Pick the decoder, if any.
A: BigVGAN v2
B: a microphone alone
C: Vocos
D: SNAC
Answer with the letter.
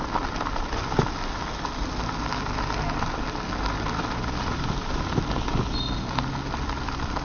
B